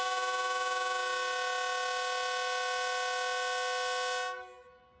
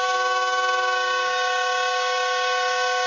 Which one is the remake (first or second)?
second